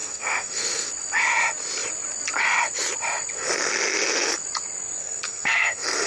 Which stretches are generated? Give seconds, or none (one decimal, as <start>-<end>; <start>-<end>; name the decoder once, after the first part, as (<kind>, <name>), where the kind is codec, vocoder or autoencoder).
0.0-0.9 (codec, SNAC); 5.0-6.1